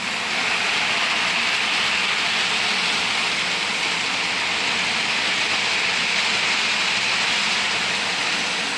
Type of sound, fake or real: real